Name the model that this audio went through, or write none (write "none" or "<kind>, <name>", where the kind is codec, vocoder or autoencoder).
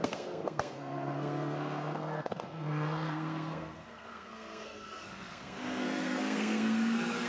codec, SNAC